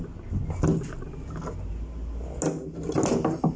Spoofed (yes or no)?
no